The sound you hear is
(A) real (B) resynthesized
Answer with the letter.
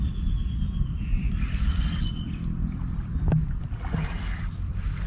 A